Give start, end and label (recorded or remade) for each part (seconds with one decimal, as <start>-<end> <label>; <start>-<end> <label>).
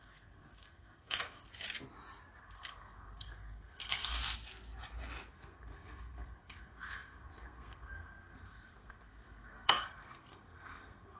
0.0-1.5 remade; 1.5-2.4 recorded; 2.4-4.2 remade; 4.2-5.3 recorded; 5.3-11.2 remade